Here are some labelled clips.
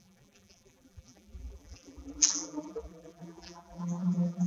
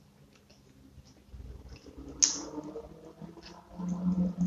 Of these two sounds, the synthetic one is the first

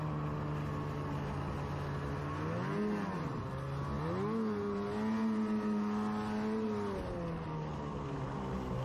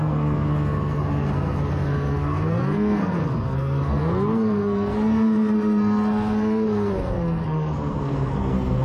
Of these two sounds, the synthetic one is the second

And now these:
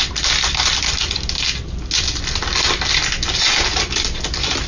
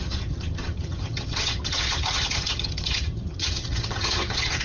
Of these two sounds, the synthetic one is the second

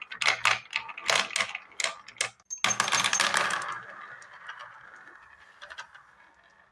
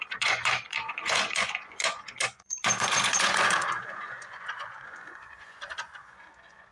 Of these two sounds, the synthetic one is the second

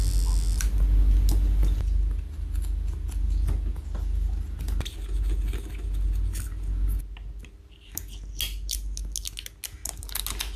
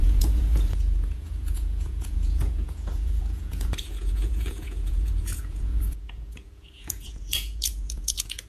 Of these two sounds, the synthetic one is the second